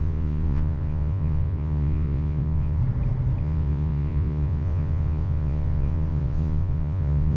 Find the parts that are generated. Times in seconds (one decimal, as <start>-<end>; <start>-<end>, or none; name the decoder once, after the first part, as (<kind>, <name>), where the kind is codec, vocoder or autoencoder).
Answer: 0.0-2.8 (vocoder, Vocos); 3.4-7.4